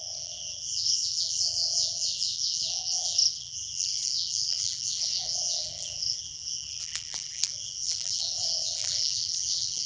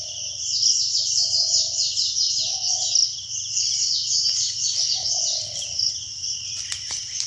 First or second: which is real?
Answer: second